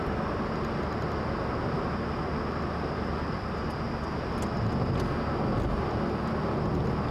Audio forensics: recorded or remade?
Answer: recorded